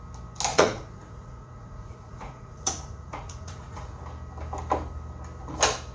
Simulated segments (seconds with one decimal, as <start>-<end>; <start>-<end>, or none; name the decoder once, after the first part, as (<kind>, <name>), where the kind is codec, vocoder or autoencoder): 0.5-4.0 (vocoder, Vocos)